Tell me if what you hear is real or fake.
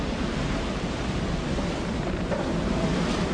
fake